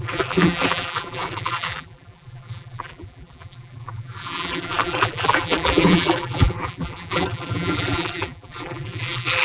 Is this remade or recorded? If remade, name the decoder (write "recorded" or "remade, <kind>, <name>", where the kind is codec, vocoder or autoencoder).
remade, vocoder, BigVGAN v2